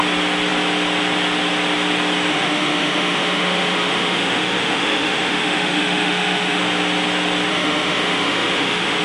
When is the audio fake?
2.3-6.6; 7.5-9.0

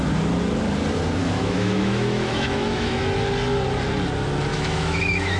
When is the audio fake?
1.2-3.0; 4.5-5.4

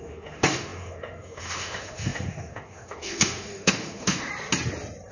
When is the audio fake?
0.0-4.3

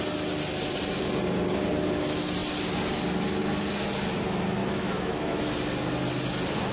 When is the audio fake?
4.6-5.4

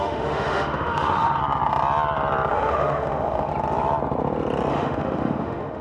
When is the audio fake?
0.0-1.4; 2.5-3.5; 4.7-5.8

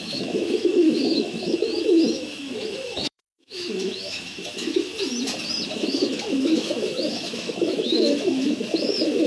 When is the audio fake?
0.0-4.9; 5.7-9.3

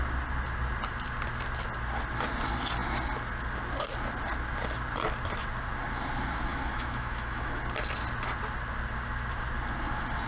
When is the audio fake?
6.5-7.6